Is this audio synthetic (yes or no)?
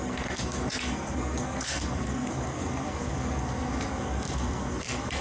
yes